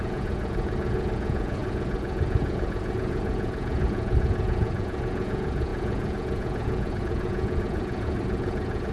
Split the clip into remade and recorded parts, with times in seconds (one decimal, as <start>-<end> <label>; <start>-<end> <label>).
0.0-8.9 remade